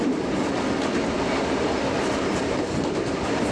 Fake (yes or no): no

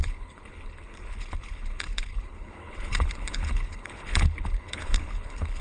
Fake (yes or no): yes